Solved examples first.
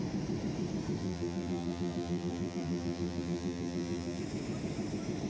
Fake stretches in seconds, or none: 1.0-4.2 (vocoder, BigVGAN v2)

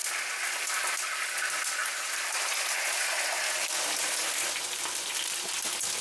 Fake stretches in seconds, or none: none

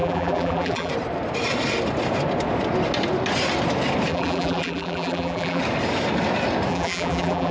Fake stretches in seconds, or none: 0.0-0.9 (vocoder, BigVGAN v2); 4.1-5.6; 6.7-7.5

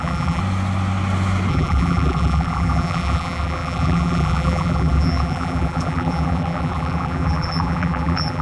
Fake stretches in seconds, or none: 0.0-0.4 (vocoder, BigVGAN v2); 1.5-8.4

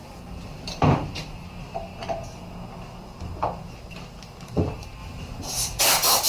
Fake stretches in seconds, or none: 0.0-1.9 (vocoder, BigVGAN v2); 3.9-6.3

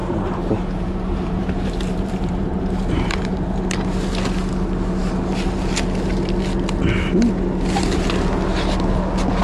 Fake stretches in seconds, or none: 0.0-3.7 (vocoder, BigVGAN v2)

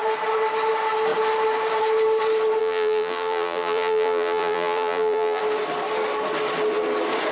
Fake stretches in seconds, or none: 2.6-5.4 (vocoder, BigVGAN v2)

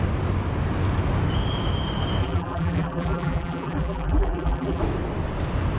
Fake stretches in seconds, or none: 2.2-4.8 (vocoder, BigVGAN v2)